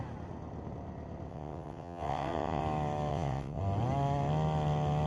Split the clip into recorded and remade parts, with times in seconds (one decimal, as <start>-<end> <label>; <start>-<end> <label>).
0.0-1.3 recorded; 1.3-2.6 remade; 2.6-3.1 recorded; 3.1-3.6 remade; 3.6-5.1 recorded